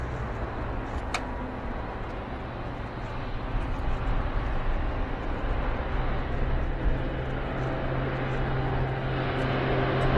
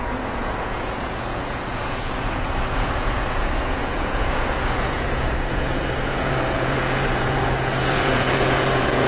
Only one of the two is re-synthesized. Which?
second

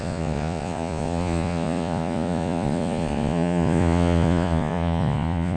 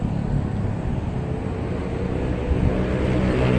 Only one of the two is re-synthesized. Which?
first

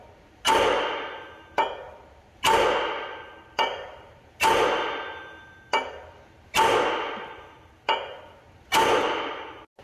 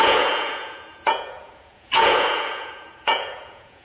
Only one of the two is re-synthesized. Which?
second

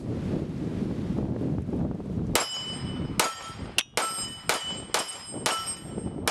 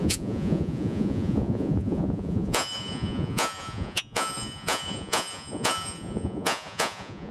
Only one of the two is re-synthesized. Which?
second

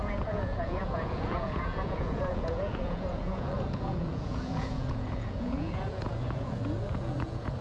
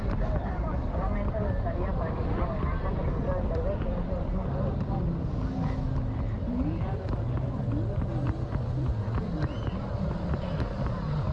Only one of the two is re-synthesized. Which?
first